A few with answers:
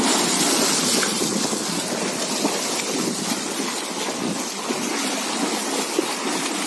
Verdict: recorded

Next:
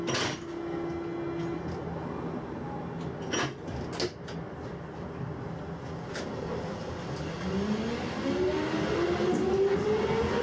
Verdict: recorded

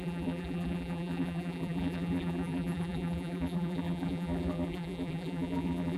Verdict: remade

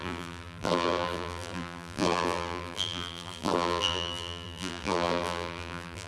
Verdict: remade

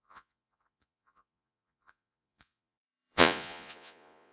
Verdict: remade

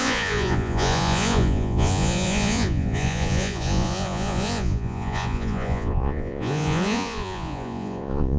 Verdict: remade